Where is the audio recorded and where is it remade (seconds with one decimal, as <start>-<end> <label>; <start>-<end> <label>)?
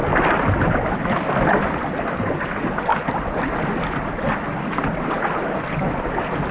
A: 0.0-6.5 recorded